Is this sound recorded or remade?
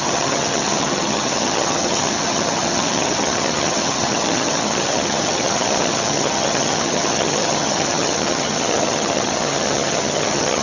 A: remade